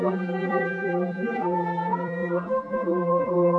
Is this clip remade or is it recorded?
remade